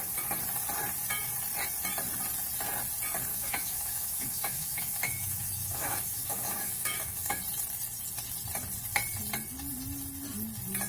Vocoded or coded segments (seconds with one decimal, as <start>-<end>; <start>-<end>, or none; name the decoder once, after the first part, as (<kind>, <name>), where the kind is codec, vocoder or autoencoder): 3.3-7.4 (autoencoder, DAC-VAE)